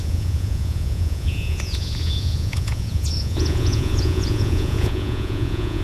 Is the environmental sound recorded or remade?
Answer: remade